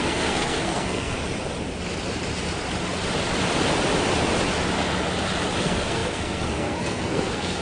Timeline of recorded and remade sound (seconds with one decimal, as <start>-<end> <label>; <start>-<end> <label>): 0.0-1.2 remade; 1.2-5.6 recorded; 5.6-7.6 remade